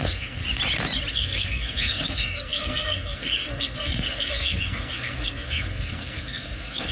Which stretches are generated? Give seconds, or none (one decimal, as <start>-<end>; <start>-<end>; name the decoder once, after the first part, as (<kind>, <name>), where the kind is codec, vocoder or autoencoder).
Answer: 0.0-0.4 (codec, SNAC); 1.1-6.9